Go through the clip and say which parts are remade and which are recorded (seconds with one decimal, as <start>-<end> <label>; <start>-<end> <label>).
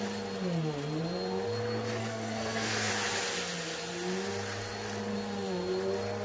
0.0-2.0 recorded; 2.0-2.9 remade; 2.9-6.2 recorded